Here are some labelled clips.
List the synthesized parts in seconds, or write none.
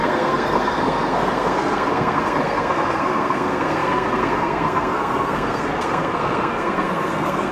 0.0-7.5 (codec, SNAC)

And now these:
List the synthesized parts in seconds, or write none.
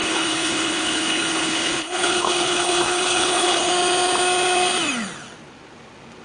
0.0-3.7 (codec, HILCodec)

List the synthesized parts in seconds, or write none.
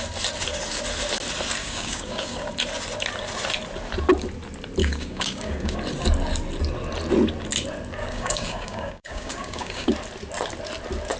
1.6-2.5 (codec, DAC); 4.8-5.8; 8.0-9.9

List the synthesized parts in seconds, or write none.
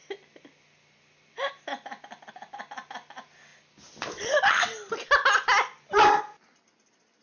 none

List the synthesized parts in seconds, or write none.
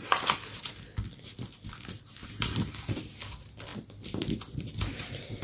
none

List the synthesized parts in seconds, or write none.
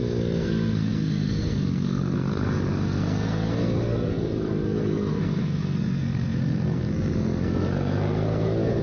0.0-8.8 (codec, SNAC)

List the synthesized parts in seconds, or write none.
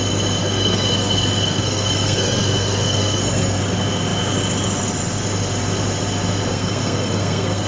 0.4-3.6 (codec, SNAC); 6.5-7.7